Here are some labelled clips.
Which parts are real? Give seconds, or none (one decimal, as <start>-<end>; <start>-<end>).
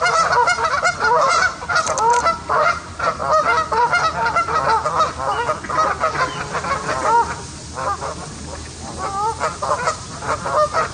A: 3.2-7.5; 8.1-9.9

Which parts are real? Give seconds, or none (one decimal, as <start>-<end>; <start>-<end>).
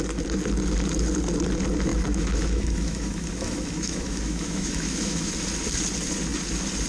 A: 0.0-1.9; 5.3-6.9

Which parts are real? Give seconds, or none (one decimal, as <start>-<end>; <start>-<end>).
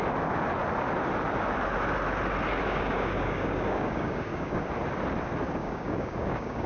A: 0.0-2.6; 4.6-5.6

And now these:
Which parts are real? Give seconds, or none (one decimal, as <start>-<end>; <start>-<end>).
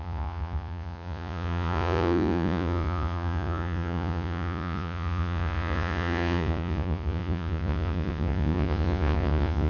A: none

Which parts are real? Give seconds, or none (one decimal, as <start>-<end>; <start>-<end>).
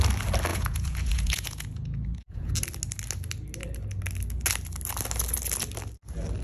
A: 0.0-0.5; 2.5-6.4